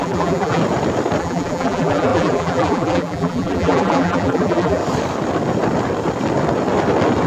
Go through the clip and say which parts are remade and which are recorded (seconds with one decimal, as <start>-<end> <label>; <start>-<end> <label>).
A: 0.0-0.6 remade; 0.6-1.2 recorded; 1.2-4.8 remade; 4.8-7.3 recorded